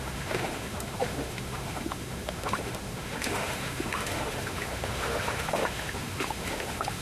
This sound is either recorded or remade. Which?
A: remade